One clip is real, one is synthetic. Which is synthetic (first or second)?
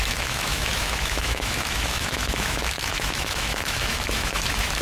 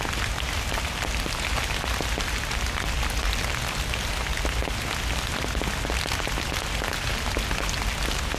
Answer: first